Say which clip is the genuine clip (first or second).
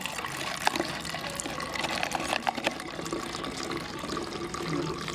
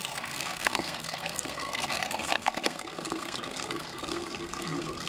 first